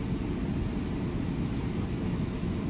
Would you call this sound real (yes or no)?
yes